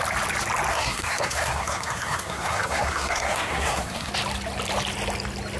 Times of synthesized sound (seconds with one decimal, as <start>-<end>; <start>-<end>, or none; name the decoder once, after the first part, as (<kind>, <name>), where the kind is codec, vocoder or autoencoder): 0.7-4.1 (codec, SNAC)